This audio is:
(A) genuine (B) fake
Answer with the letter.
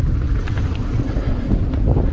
A